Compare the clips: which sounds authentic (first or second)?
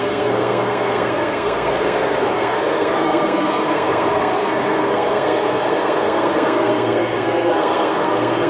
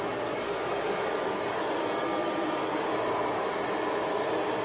second